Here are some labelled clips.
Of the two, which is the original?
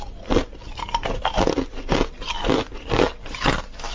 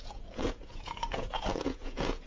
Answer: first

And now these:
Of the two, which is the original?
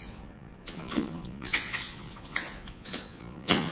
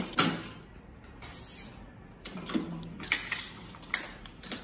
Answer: second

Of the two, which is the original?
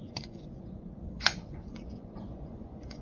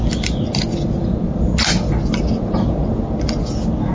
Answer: second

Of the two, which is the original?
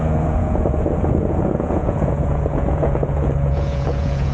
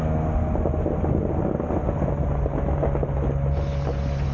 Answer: second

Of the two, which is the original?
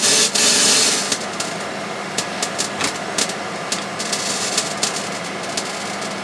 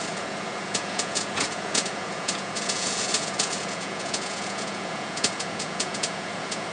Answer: first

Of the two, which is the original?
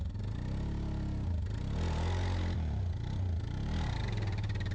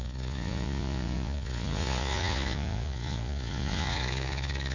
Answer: first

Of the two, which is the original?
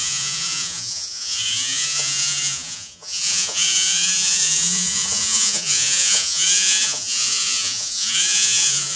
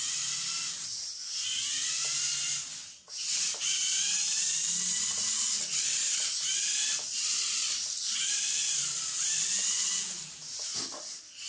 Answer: second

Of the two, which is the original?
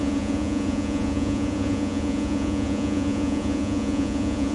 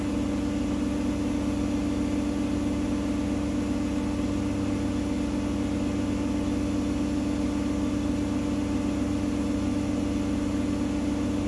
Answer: second